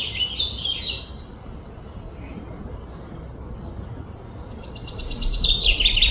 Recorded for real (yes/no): yes